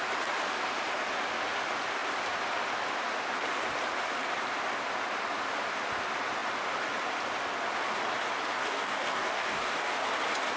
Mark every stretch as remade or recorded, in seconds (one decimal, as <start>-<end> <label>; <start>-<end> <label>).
0.0-8.6 recorded; 8.6-10.0 remade; 10.0-10.6 recorded